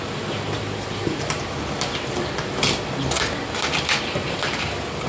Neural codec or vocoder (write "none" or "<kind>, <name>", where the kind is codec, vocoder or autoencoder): vocoder, BigVGAN v2